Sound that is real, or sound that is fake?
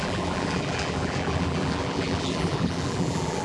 fake